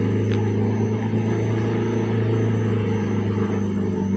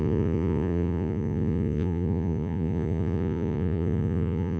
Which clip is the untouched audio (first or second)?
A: first